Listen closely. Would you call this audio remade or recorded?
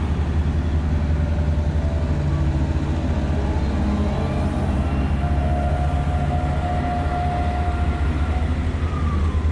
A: recorded